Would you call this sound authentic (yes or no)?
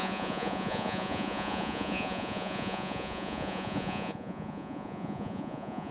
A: no